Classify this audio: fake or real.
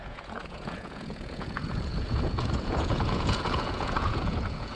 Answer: fake